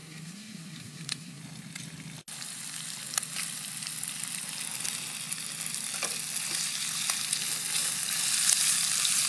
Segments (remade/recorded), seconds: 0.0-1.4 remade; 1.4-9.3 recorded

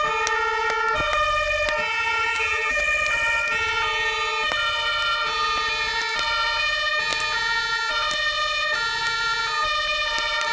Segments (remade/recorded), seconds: 0.0-2.3 recorded; 2.3-2.8 remade; 2.8-10.5 recorded

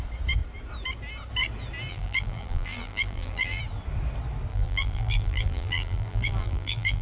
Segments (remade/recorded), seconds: 0.0-1.9 recorded; 1.9-3.6 remade; 3.6-4.5 recorded; 4.5-7.0 remade

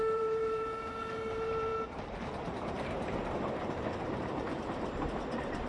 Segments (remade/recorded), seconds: 0.0-5.7 remade

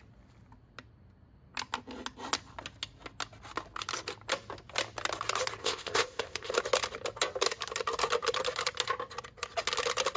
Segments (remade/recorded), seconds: 0.0-5.6 recorded; 5.6-6.5 remade; 6.5-10.2 recorded

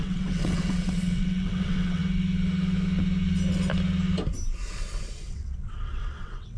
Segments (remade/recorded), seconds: 0.0-2.0 remade; 2.0-5.3 recorded; 5.3-6.6 remade

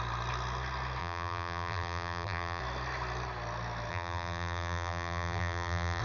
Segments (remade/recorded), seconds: 0.0-1.0 recorded; 1.0-2.6 remade; 2.6-3.9 recorded; 3.9-6.0 remade